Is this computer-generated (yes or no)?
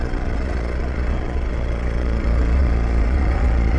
yes